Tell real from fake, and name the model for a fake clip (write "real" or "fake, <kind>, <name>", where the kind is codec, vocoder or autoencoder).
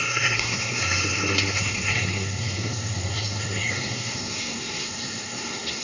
fake, codec, SNAC